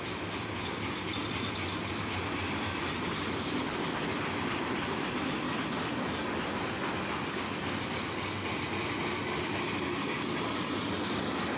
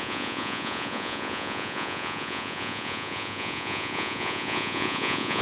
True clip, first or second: first